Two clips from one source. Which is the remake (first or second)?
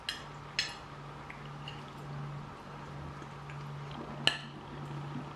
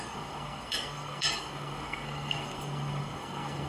second